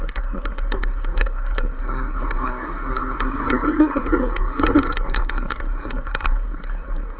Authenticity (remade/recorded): remade